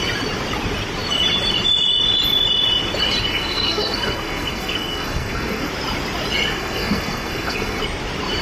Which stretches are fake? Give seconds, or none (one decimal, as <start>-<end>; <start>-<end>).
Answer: 3.3-5.7; 6.5-7.8